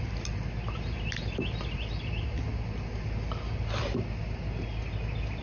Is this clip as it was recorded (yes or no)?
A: yes